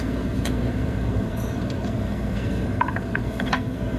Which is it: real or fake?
fake